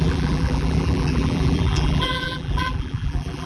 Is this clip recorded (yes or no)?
no